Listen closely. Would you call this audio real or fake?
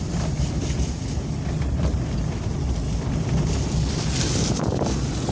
real